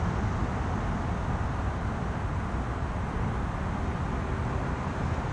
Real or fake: real